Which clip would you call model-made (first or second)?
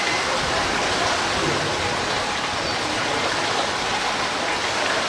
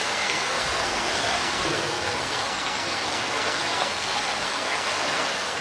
second